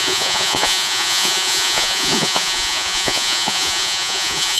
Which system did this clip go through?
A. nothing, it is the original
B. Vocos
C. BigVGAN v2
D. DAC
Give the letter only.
B